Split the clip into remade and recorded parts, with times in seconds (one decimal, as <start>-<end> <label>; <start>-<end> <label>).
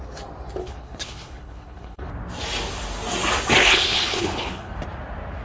0.0-0.6 recorded; 0.6-2.1 remade; 2.1-3.6 recorded; 3.6-4.8 remade; 4.8-5.4 recorded